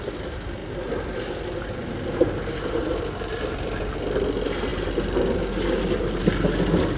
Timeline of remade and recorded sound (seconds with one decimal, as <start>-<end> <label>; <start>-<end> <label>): 0.0-7.0 recorded